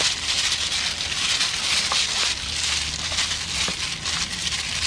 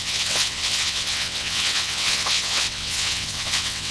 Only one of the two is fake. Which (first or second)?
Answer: second